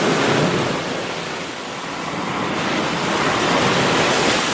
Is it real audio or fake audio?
real